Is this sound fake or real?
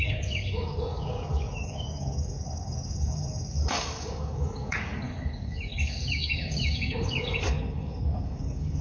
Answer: fake